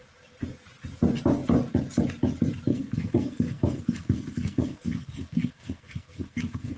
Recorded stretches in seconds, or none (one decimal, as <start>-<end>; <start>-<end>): 0.0-2.7